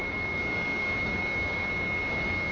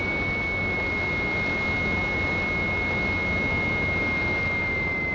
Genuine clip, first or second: second